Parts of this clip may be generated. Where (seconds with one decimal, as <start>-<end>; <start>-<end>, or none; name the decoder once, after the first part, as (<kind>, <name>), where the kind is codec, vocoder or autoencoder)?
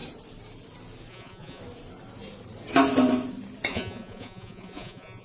1.1-1.6 (vocoder, Vocos); 3.7-5.2